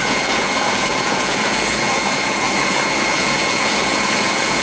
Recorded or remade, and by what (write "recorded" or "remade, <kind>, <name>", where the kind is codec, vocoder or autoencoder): remade, vocoder, Vocos